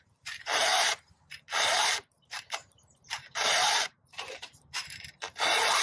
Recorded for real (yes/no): no